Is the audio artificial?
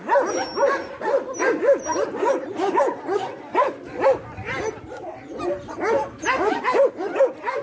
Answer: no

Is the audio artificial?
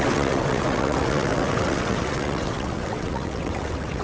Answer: yes